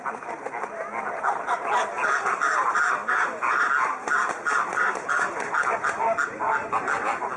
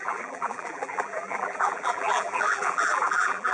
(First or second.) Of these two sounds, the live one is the first